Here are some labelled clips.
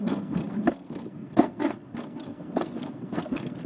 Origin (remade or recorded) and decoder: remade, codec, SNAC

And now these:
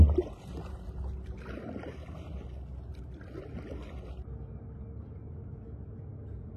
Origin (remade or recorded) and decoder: recorded